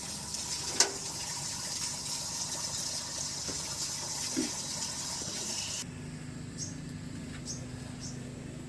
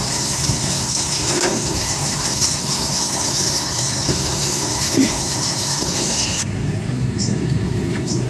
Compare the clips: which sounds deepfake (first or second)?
second